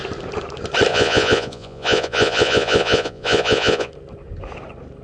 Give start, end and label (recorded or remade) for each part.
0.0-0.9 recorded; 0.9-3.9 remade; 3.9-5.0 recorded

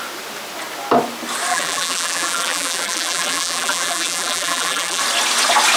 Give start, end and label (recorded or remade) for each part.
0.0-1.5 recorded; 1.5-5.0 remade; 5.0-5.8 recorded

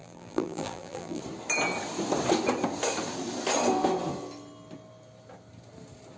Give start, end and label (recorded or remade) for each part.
0.0-1.2 remade; 1.2-6.2 recorded

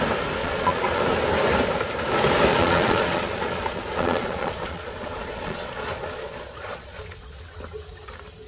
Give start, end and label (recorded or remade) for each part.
0.0-0.4 recorded; 0.4-1.0 remade; 1.0-2.5 recorded; 2.5-7.4 remade; 7.4-8.5 recorded